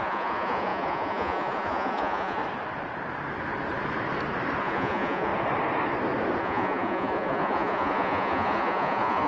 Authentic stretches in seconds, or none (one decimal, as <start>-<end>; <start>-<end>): 2.4-4.6; 5.3-6.4